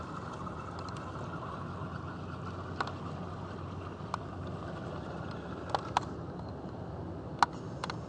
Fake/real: real